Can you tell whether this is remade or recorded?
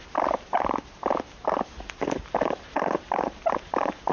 recorded